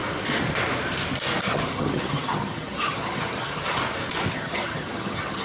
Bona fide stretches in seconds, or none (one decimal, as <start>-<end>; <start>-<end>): 0.0-1.5; 3.8-4.3